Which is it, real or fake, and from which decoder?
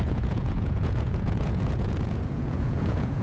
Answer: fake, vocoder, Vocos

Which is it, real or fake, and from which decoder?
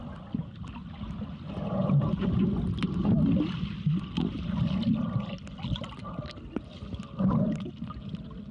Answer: real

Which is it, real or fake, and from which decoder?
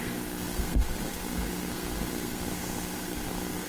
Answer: fake, codec, SNAC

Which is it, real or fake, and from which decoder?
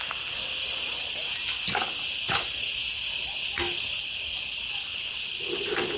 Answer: real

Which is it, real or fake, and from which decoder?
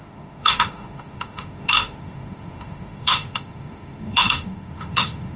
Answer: fake, autoencoder, DAC-VAE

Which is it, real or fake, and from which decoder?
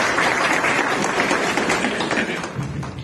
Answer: fake, vocoder, BigVGAN v2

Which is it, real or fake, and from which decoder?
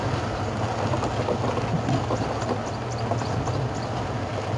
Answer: real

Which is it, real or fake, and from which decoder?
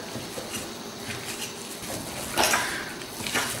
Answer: real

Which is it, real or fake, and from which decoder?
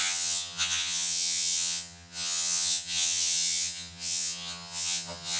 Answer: fake, vocoder, HiFi-GAN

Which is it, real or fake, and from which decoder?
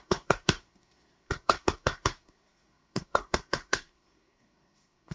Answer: fake, codec, SNAC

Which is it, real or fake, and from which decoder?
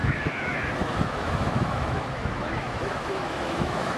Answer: fake, autoencoder, DAC-VAE